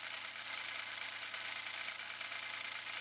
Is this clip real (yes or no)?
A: yes